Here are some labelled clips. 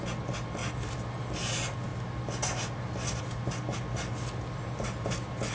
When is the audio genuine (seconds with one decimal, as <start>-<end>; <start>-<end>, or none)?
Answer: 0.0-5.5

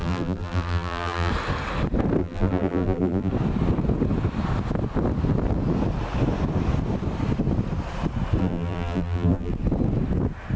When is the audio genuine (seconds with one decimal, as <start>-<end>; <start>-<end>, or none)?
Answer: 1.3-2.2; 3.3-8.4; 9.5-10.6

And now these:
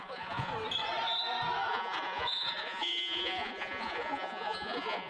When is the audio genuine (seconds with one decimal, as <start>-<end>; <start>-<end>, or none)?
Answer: 0.5-1.7

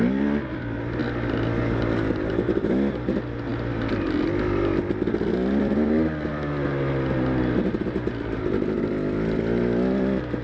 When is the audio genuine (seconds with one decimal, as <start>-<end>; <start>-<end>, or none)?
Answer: 0.0-10.4

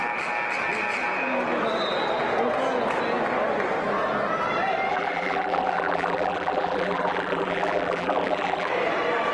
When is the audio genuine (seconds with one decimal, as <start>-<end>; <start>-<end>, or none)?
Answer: 0.0-4.9; 8.7-9.3

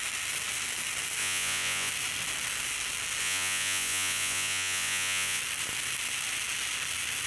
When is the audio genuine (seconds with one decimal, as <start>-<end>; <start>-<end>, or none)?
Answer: 0.0-1.2; 1.9-3.2; 5.4-7.3

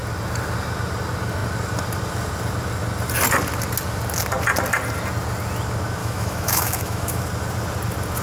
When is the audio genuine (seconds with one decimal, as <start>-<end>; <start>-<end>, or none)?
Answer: 0.0-6.0; 7.2-8.2